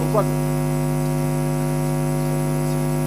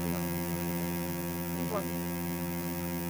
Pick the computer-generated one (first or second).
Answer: second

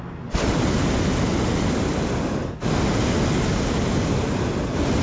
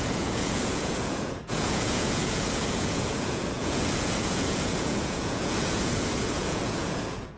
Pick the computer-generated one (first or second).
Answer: second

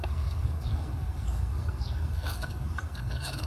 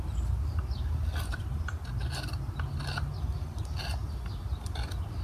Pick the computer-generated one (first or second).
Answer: first